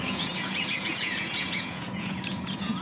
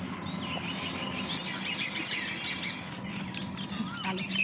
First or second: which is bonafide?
second